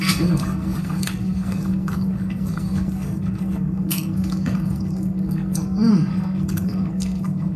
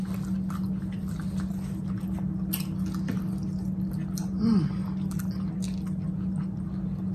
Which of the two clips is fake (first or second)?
first